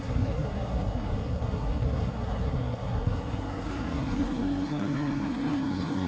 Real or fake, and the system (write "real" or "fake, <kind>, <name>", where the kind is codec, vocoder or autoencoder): fake, codec, SNAC